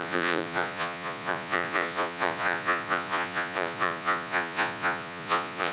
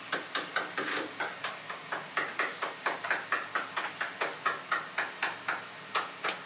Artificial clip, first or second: first